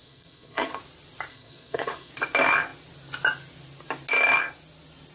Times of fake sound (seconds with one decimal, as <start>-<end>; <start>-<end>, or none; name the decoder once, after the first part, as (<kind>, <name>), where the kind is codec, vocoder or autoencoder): 0.0-0.8 (codec, SNAC); 1.3-2.1